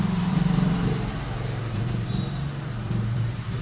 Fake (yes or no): yes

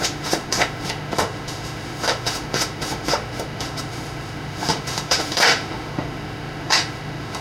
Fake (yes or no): yes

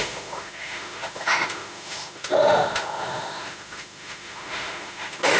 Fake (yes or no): yes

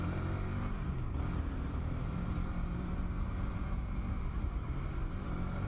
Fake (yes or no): yes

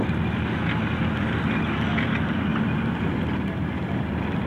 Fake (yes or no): no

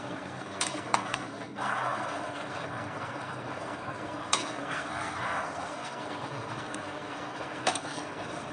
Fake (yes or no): yes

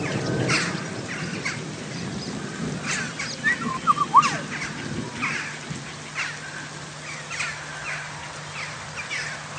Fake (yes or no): no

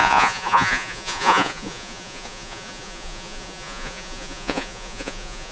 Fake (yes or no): yes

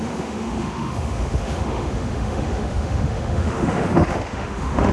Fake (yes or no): yes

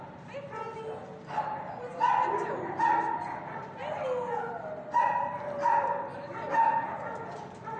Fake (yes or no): no